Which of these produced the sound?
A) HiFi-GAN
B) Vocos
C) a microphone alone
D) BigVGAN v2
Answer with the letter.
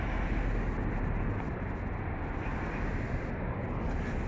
C